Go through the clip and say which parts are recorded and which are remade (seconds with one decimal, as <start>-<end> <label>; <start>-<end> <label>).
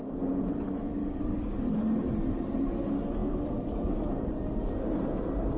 0.0-1.0 recorded; 1.0-1.8 remade; 1.8-5.6 recorded